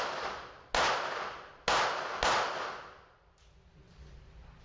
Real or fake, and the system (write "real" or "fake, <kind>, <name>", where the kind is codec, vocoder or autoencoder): real